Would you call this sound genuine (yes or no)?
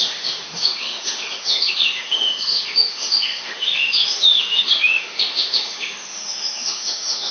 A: no